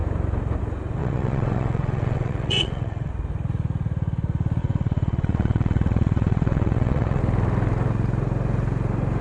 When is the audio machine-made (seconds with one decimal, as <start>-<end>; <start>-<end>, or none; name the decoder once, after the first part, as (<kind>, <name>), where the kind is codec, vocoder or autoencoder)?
1.0-3.1 (vocoder, WaveNeXt); 4.6-7.2